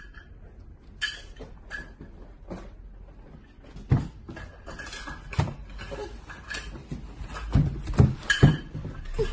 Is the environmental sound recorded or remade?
recorded